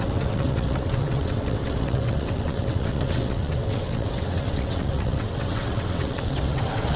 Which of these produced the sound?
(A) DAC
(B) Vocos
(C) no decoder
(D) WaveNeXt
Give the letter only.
D